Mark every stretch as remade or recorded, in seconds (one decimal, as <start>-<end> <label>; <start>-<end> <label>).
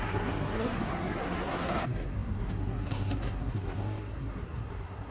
0.0-5.1 remade